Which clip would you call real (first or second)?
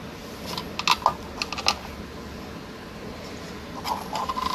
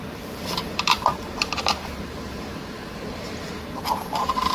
first